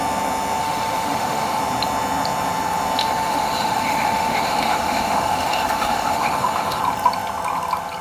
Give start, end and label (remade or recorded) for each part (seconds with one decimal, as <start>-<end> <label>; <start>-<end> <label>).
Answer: 0.0-0.6 recorded; 0.6-1.6 remade; 1.6-3.0 recorded; 3.0-6.8 remade; 6.8-8.0 recorded